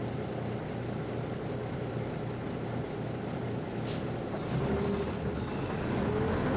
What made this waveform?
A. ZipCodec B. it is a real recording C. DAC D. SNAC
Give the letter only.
B